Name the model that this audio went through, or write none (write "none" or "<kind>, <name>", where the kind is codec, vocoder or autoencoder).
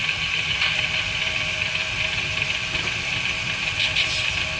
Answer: vocoder, BigVGAN v2